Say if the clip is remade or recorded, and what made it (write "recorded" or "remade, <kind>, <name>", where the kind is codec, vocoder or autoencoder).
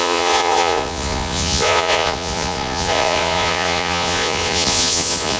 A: remade, vocoder, Vocos